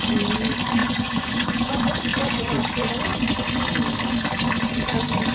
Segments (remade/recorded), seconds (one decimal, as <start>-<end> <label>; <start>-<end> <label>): 0.0-0.8 recorded; 0.8-1.7 remade; 1.7-5.3 recorded